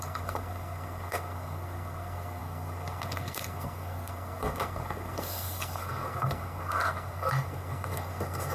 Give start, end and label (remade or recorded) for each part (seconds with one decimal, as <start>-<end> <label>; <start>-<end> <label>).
0.0-8.5 remade